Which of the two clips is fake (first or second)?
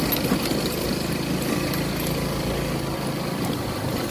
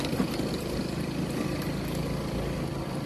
second